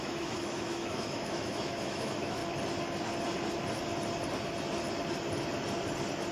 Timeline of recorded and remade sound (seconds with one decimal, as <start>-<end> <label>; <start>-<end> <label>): 0.0-2.4 remade; 2.4-6.3 recorded